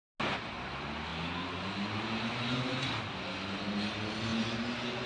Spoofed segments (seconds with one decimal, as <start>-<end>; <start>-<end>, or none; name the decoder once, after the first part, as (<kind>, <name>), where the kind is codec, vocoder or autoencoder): none